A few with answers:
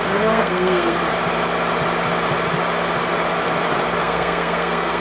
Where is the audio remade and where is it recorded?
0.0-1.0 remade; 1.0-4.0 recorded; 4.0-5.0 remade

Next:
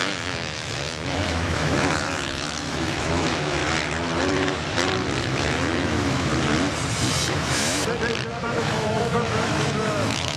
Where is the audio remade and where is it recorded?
0.0-3.6 remade; 3.6-5.2 recorded; 5.2-6.3 remade; 6.3-7.3 recorded; 7.3-7.8 remade; 7.8-8.4 recorded; 8.4-10.4 remade

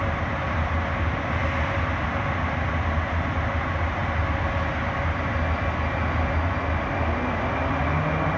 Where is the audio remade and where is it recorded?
0.0-8.4 recorded

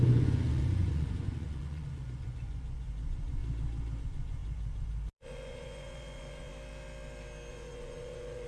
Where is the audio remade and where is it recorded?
0.0-3.4 remade; 3.4-4.0 recorded; 4.0-6.5 remade; 6.5-7.5 recorded; 7.5-8.5 remade

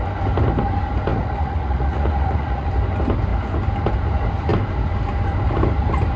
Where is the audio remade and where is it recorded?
0.0-1.1 recorded; 1.1-2.7 remade; 2.7-6.2 recorded

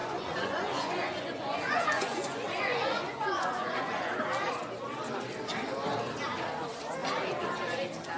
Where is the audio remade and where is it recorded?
0.0-4.2 remade; 4.2-8.2 recorded

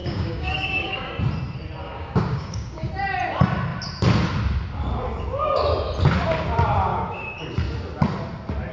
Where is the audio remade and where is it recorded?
0.0-1.2 remade; 1.2-1.8 recorded; 1.8-2.9 remade; 2.9-6.9 recorded; 6.9-7.4 remade; 7.4-8.7 recorded